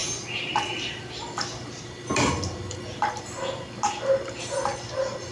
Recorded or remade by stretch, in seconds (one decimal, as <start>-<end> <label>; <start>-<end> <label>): 0.0-3.2 remade; 3.2-4.7 recorded; 4.7-5.3 remade